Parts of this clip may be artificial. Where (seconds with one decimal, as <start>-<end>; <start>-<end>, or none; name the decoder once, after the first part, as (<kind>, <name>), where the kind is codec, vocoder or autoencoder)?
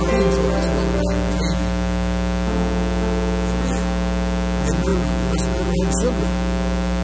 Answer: none